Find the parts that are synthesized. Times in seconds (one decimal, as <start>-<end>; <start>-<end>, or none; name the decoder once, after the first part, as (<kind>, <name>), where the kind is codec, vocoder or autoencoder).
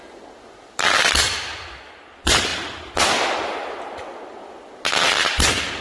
none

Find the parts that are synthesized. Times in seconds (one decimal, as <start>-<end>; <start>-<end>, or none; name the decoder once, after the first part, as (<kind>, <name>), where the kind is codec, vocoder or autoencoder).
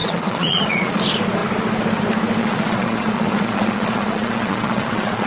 0.0-1.0 (vocoder, Vocos); 2.4-5.3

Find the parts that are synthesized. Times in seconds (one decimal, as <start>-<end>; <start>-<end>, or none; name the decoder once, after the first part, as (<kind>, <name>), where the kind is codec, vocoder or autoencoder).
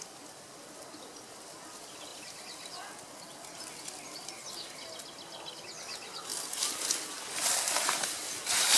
none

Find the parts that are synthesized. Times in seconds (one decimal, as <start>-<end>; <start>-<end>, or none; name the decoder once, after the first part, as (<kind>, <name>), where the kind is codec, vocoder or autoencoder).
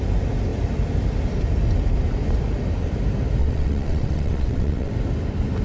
3.4-4.9 (vocoder, WaveNeXt)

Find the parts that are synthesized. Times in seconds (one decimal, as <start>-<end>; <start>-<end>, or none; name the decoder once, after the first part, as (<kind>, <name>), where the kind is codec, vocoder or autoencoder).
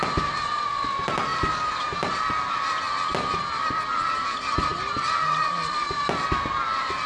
none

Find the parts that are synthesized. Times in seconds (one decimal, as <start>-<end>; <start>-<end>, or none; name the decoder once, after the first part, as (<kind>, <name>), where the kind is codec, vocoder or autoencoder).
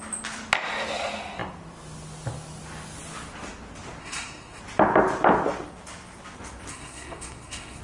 4.0-4.6 (codec, SNAC); 6.7-7.8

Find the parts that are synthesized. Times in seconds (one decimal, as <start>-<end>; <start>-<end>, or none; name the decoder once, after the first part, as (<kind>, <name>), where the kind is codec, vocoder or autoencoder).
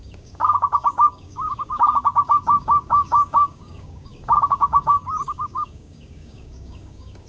0.0-7.3 (codec, DAC)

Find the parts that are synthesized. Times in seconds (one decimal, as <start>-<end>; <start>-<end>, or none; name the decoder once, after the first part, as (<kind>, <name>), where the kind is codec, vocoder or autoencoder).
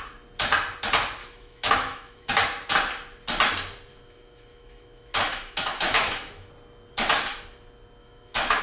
1.2-2.3 (autoencoder, DAC-VAE); 3.9-6.5; 8.0-8.6